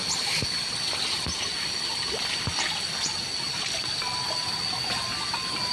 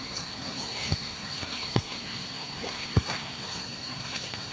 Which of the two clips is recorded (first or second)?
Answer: first